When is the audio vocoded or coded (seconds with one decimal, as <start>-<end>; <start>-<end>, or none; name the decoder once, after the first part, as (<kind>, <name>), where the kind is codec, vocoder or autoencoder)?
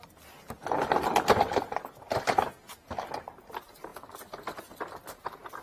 none